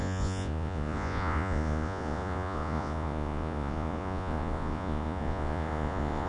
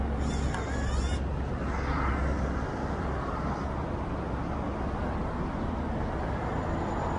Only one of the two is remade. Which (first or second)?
first